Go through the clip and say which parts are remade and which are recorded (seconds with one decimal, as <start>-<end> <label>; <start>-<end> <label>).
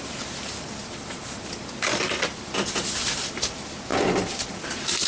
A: 0.0-3.9 remade; 3.9-4.5 recorded; 4.5-5.1 remade